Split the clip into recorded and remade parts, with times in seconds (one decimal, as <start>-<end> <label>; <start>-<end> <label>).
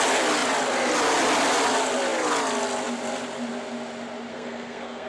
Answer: 0.0-4.3 recorded; 4.3-5.1 remade